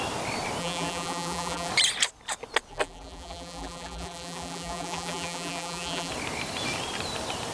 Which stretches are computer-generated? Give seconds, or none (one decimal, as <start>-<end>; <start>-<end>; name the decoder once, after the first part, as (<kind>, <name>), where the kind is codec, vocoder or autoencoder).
0.6-1.7 (vocoder, BigVGAN v2); 2.7-6.1